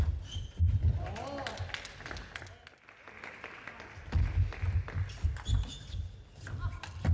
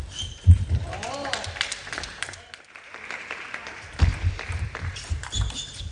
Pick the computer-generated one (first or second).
second